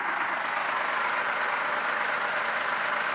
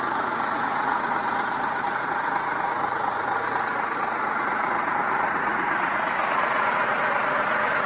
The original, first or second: first